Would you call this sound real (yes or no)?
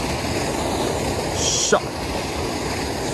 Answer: yes